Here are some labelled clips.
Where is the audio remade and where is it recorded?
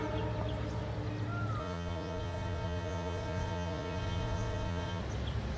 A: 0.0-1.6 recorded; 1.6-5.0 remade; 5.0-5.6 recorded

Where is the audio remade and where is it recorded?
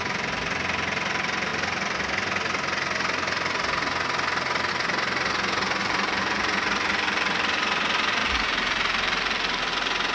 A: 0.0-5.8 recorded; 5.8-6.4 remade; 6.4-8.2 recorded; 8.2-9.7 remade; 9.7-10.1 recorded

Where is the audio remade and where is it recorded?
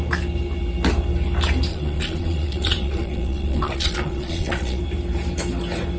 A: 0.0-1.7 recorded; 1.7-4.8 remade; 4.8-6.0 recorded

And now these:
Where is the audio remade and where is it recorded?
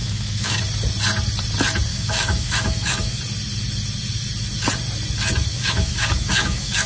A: 0.0-0.6 remade; 0.6-1.9 recorded; 1.9-3.2 remade; 3.2-5.5 recorded; 5.5-6.9 remade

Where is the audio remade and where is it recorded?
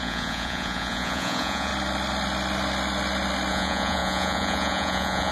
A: 0.0-1.7 remade; 1.7-3.5 recorded; 3.5-5.3 remade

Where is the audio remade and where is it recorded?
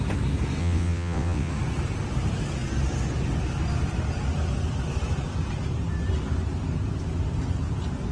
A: 0.0-0.6 recorded; 0.6-1.5 remade; 1.5-8.1 recorded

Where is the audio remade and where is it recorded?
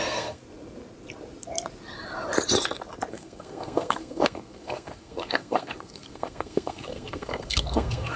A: 0.0-0.4 remade; 0.4-3.1 recorded; 3.1-8.2 remade